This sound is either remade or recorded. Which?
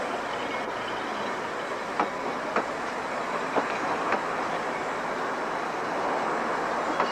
recorded